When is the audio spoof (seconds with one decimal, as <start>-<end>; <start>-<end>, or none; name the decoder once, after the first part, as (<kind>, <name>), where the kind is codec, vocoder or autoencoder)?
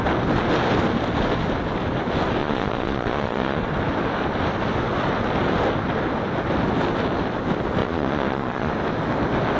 2.4-3.6 (vocoder, Vocos); 7.8-8.7